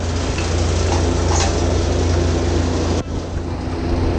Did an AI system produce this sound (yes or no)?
no